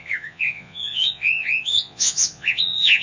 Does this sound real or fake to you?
fake